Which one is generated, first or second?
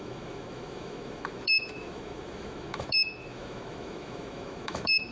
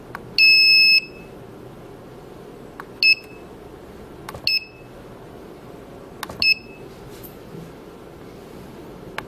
first